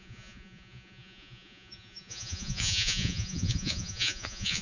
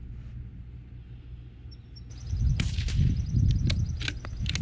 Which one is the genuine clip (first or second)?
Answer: second